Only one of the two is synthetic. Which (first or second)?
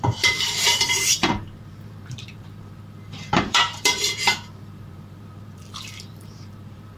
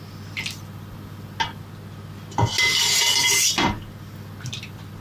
first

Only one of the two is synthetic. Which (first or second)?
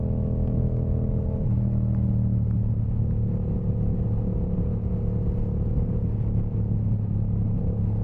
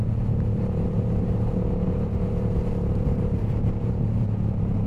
second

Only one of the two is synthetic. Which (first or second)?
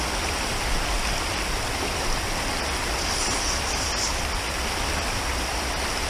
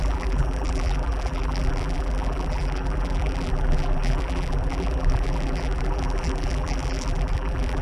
second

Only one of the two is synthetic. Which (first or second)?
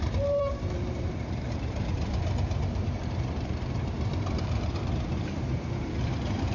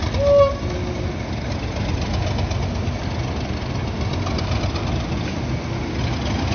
first